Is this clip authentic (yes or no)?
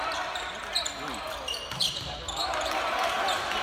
yes